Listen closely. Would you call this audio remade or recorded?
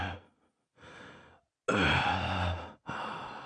recorded